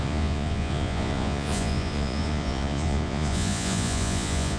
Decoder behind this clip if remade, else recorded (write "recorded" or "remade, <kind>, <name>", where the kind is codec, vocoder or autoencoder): remade, vocoder, Vocos